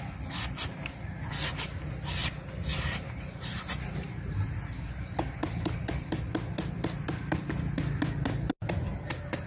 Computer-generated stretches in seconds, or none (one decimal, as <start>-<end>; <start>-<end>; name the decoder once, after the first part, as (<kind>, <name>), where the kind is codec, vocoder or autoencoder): 2.7-6.3 (vocoder, BigVGAN v2)